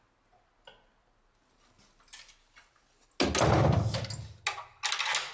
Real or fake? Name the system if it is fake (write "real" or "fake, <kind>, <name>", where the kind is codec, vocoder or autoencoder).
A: real